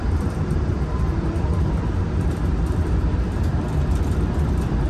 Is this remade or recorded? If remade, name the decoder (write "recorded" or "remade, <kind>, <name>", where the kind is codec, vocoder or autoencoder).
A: remade, vocoder, BigVGAN v2